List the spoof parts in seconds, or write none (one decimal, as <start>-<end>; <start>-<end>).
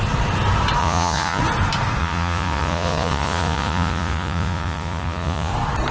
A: 0.8-1.4; 2.0-5.5